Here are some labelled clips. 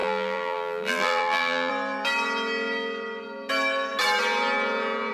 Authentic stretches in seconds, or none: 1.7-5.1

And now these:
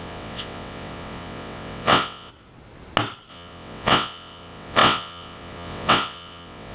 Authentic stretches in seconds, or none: 2.3-3.3

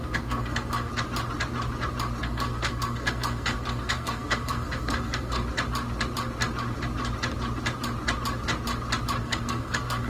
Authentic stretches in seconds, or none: 0.9-2.2; 5.4-9.2